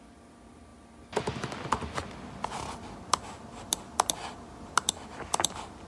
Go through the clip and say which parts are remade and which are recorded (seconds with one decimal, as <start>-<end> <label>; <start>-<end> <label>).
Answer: 0.0-5.9 recorded

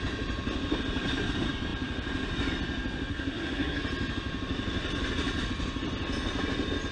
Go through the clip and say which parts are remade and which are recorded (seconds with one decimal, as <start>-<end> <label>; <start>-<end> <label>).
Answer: 0.0-3.1 recorded; 3.1-3.8 remade; 3.8-6.9 recorded

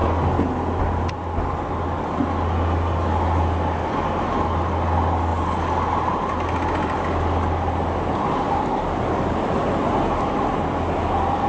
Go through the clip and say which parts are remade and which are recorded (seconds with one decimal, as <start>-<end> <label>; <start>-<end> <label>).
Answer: 0.0-11.5 recorded